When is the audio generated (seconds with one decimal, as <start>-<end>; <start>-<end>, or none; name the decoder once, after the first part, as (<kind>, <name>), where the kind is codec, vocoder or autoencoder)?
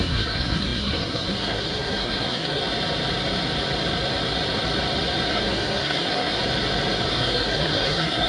0.0-2.6 (codec, SNAC); 5.3-6.4; 7.1-8.3